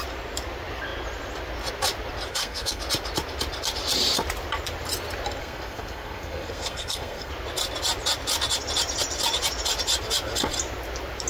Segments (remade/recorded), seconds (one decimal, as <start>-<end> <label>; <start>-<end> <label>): 0.0-2.3 recorded; 2.3-2.8 remade; 2.8-5.4 recorded; 5.4-7.3 remade; 7.3-11.3 recorded